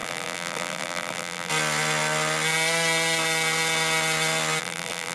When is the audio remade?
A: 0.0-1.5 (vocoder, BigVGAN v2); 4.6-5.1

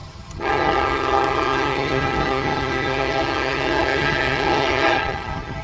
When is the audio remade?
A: 0.0-5.6 (vocoder, HiFi-GAN)

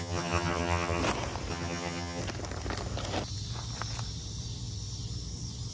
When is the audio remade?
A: 0.0-1.0 (vocoder, HiFi-GAN); 1.5-2.2

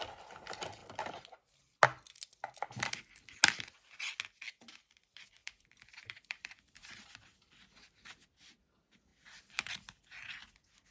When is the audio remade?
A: 5.4-7.5 (vocoder, BigVGAN v2); 9.1-9.9

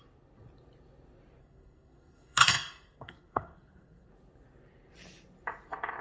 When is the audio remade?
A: 1.4-4.1 (codec, SNAC)

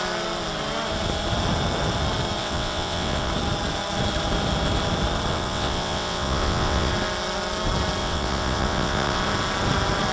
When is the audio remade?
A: 2.4-3.3 (vocoder, WaveNeXt); 5.3-6.9; 8.0-9.2